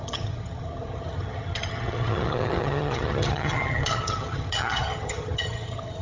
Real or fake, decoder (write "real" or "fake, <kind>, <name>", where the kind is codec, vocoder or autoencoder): fake, vocoder, HiFi-GAN